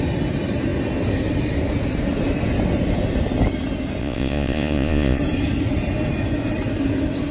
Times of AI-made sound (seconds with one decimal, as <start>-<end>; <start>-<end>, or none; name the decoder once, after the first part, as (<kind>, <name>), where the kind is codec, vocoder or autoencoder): 4.0-5.2 (vocoder, Vocos)